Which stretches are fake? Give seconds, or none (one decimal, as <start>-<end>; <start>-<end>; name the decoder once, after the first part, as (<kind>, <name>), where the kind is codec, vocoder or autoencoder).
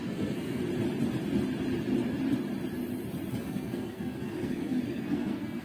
0.0-0.6 (codec, SNAC); 3.3-5.6